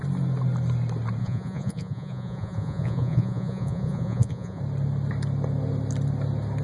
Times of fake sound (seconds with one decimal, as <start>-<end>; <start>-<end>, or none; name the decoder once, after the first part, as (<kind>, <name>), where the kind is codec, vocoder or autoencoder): 1.2-4.6 (vocoder, Vocos)